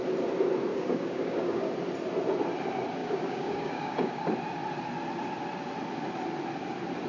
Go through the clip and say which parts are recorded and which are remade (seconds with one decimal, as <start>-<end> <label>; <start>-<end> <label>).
0.0-0.7 recorded; 0.7-1.7 remade; 1.7-3.0 recorded; 3.0-4.2 remade; 4.2-7.1 recorded